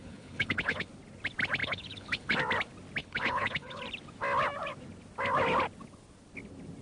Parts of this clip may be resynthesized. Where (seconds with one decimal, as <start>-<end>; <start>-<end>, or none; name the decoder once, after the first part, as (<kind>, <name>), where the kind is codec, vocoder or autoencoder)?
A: 0.0-0.9 (codec, HILCodec); 1.6-2.4; 3.0-3.8